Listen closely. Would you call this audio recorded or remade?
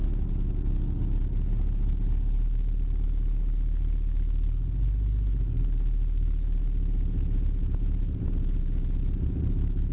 recorded